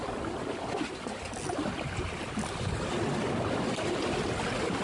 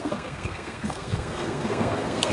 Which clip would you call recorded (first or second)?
first